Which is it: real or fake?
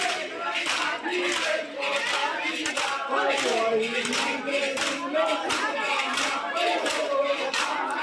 real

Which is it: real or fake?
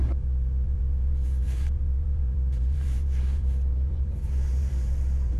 fake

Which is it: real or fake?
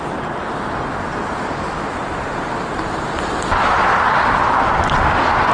real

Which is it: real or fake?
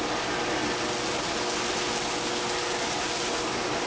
real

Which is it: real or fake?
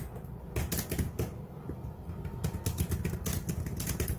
real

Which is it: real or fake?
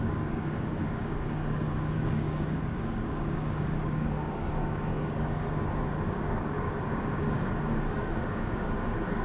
fake